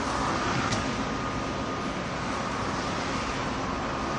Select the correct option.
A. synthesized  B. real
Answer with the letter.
B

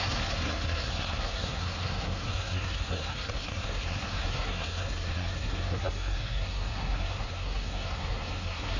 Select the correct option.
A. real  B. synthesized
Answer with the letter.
B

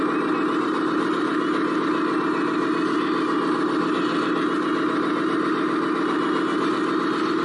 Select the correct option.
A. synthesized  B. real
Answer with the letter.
B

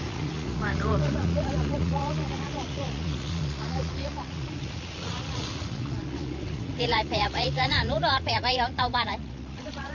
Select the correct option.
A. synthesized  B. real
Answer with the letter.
A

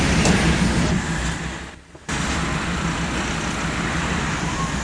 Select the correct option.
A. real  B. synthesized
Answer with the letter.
B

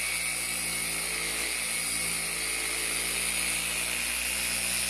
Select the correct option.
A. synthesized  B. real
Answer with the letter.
B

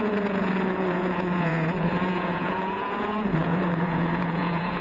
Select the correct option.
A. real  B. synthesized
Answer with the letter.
B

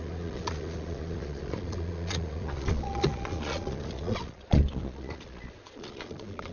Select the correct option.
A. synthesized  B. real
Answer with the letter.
A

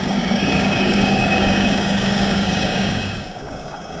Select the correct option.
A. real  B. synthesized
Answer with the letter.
B